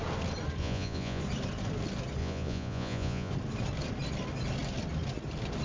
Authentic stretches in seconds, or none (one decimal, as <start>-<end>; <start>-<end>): 0.0-0.6; 1.2-2.2; 3.3-5.6